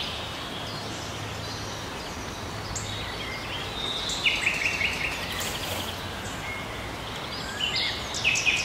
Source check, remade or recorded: recorded